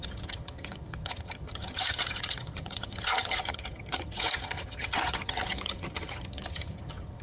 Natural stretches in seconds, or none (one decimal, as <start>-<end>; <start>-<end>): none